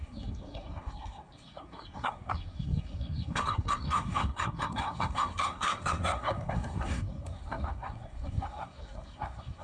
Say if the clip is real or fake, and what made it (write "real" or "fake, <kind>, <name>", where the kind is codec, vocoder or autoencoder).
fake, codec, SNAC